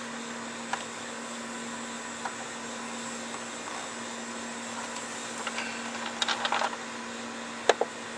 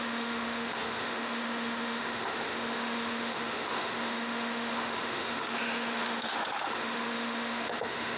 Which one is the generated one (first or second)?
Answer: second